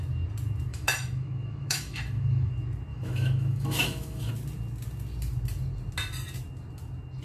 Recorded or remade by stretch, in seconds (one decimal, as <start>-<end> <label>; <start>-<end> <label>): 0.0-0.7 recorded; 0.7-2.5 remade; 2.5-2.9 recorded; 2.9-4.3 remade; 4.3-7.2 recorded